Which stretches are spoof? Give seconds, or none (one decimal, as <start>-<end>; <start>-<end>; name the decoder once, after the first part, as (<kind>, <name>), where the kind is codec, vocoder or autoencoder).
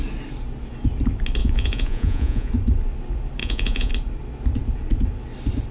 1.4-2.5 (vocoder, Vocos); 3.4-3.9